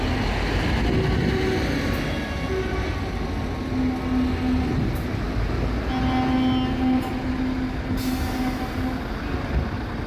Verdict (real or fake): real